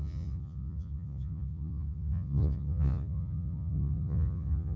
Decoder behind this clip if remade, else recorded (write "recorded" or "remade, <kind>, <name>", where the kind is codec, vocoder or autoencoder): remade, vocoder, Vocos